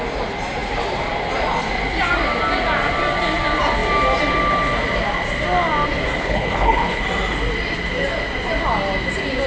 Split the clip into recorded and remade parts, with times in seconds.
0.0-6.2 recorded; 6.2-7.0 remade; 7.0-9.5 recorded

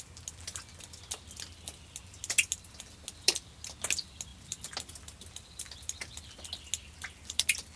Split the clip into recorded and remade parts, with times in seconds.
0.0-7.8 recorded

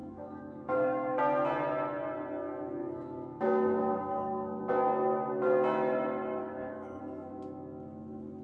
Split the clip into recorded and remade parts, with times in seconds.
0.0-1.2 remade; 1.2-2.8 recorded; 2.8-4.6 remade; 4.6-6.4 recorded; 6.4-7.0 remade; 7.0-8.4 recorded

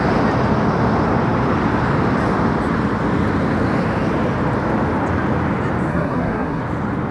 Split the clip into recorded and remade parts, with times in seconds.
0.0-5.9 recorded; 5.9-6.6 remade; 6.6-7.1 recorded

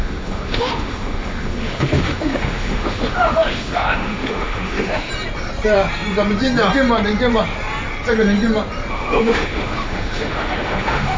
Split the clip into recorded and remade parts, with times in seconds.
0.0-5.1 remade; 5.1-8.9 recorded; 8.9-11.2 remade